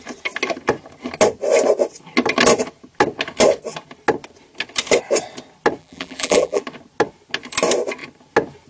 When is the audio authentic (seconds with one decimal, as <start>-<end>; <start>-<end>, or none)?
0.0-5.8; 6.6-8.7